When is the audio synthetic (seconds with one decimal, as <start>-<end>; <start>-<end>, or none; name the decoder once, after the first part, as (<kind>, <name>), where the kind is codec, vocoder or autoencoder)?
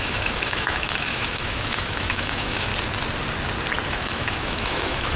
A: 0.0-2.7 (autoencoder, DAC-VAE); 3.9-5.2